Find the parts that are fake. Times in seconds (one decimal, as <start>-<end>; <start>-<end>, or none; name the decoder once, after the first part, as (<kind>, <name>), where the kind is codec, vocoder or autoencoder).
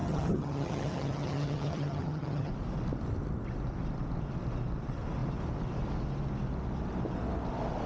0.0-2.5 (vocoder, HiFi-GAN)